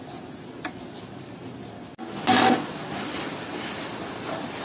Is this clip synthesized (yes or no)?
no